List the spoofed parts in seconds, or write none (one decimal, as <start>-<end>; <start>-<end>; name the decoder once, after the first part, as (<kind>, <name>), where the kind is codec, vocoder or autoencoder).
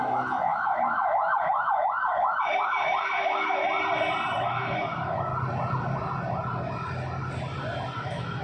0.0-3.6 (autoencoder, DAC-VAE); 4.4-5.3; 8.0-8.4